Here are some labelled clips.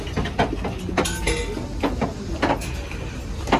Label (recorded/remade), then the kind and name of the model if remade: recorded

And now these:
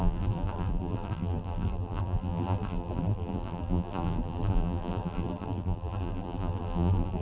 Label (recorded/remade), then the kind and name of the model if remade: remade, vocoder, BigVGAN v2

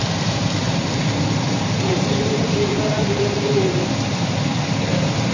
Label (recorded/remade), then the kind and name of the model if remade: remade, vocoder, BigVGAN v2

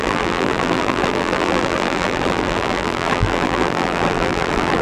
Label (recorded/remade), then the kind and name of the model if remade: remade, vocoder, BigVGAN v2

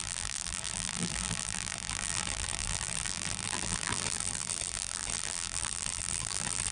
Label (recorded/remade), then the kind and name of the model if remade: remade, vocoder, BigVGAN v2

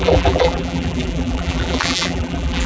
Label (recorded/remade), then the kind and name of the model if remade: remade, vocoder, BigVGAN v2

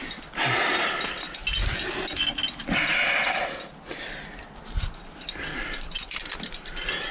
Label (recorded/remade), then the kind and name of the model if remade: recorded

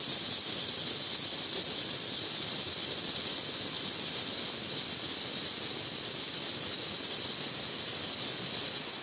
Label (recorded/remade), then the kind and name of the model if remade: recorded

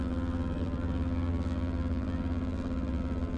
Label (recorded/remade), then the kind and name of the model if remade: remade, vocoder, BigVGAN v2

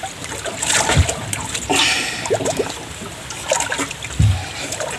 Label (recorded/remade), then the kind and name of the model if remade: recorded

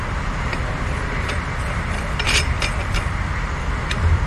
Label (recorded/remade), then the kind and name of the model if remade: remade, vocoder, BigVGAN v2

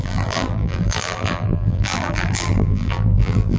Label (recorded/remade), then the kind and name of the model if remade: remade, vocoder, BigVGAN v2